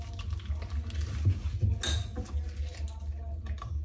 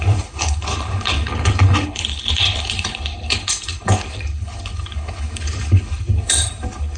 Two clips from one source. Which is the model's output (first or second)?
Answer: second